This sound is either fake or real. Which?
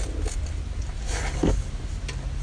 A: real